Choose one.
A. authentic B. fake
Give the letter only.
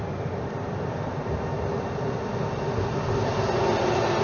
A